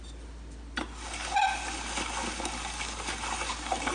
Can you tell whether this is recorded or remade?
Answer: recorded